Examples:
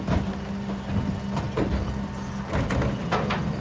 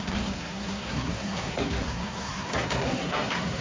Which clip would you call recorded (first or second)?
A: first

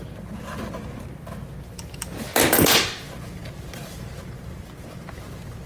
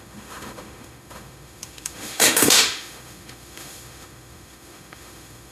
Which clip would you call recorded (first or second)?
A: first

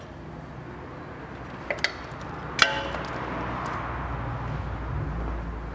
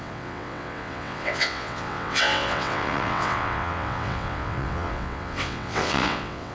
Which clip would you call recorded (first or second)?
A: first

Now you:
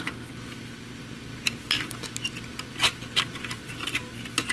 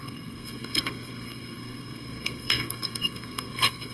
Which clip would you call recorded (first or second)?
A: first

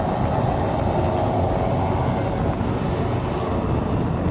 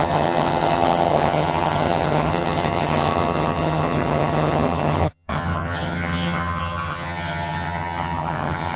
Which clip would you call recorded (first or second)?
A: first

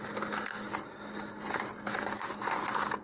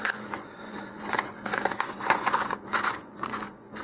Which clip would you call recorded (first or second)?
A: first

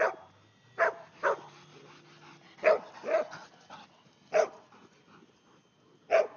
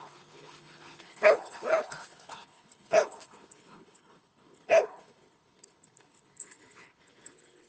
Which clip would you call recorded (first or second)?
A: first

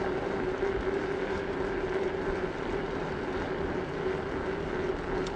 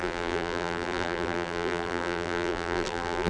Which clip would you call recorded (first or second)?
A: first